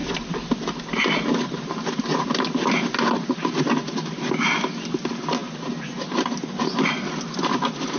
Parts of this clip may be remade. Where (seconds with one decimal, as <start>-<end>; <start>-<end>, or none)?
none